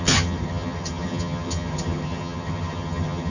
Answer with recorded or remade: remade